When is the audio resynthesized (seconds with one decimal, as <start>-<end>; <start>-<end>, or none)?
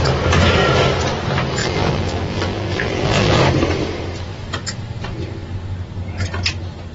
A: 1.6-3.4